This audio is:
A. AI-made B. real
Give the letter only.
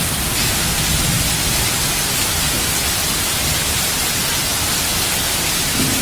B